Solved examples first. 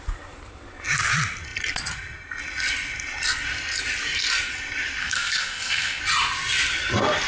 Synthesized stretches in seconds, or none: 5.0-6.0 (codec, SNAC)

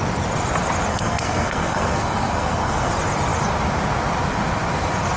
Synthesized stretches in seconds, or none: 0.9-2.9 (codec, SNAC)

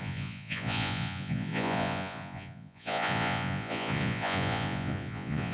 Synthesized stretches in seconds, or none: 0.0-5.5 (vocoder, Vocos)

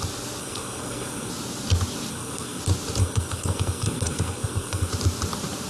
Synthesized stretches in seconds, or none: 0.4-1.3 (codec, SNAC); 2.1-2.6; 3.0-4.9

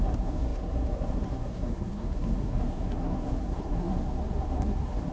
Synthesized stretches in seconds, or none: 0.0-5.1 (codec, SNAC)